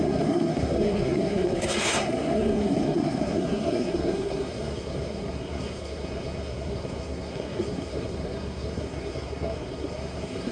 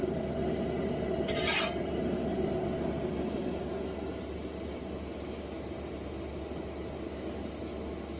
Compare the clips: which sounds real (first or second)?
second